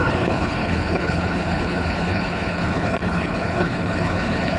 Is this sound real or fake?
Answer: fake